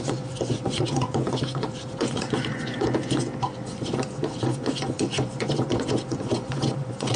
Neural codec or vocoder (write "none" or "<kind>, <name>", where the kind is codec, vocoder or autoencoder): vocoder, Vocos